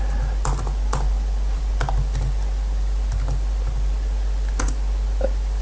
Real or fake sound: real